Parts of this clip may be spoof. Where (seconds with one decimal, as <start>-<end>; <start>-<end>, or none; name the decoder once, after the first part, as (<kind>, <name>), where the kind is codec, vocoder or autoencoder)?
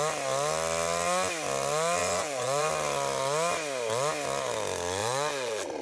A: 2.0-2.7 (vocoder, Vocos); 5.0-5.8